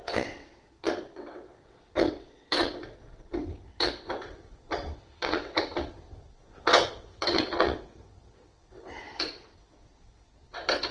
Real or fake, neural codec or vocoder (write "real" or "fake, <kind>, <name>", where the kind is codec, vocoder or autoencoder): fake, vocoder, WaveNeXt